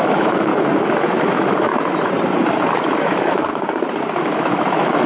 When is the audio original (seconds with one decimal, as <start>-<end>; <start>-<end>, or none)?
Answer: 0.5-1.2; 1.7-2.7; 3.5-4.2